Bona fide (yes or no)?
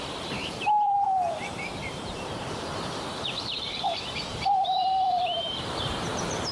no